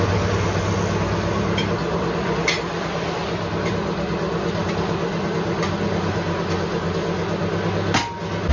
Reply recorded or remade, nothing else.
recorded